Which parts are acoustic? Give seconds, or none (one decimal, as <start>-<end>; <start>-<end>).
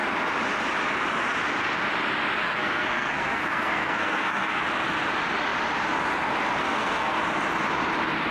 0.0-2.4; 4.6-6.6; 7.2-8.3